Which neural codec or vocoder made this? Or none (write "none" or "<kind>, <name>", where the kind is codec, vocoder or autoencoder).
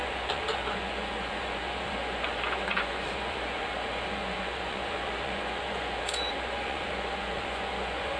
vocoder, Vocos